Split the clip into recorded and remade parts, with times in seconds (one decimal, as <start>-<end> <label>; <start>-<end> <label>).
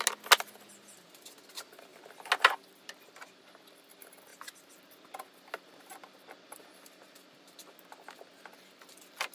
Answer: 0.0-9.3 recorded